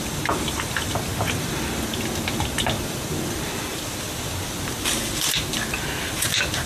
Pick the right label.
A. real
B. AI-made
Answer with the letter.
A